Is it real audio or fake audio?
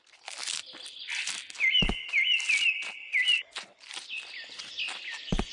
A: real